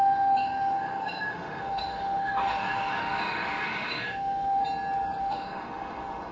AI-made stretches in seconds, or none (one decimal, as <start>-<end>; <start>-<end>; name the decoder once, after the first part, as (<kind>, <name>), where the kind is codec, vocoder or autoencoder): 0.0-4.6 (autoencoder, DAC-VAE); 5.2-6.3